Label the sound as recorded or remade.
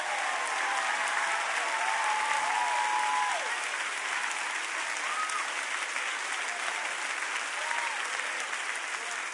recorded